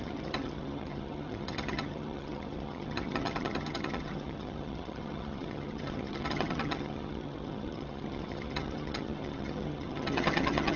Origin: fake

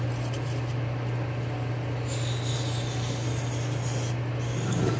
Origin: real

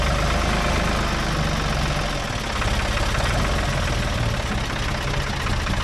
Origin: real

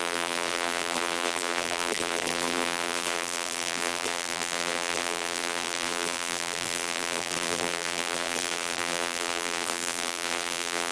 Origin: fake